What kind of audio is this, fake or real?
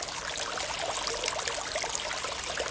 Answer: real